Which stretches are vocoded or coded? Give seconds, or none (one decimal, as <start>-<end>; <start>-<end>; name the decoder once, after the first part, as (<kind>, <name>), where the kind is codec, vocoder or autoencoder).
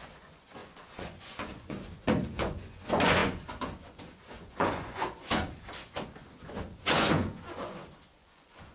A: 0.0-8.7 (vocoder, Vocos)